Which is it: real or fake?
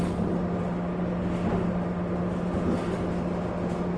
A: real